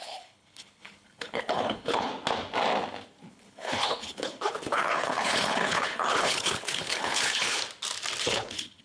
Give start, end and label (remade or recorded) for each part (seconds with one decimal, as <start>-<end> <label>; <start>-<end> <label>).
0.0-2.1 remade; 2.1-3.3 recorded; 3.3-7.6 remade; 7.6-8.2 recorded; 8.2-8.8 remade